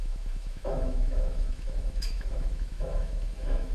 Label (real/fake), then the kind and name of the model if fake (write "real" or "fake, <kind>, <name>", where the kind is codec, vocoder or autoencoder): fake, autoencoder, DAC-VAE